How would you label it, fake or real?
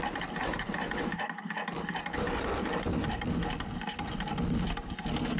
real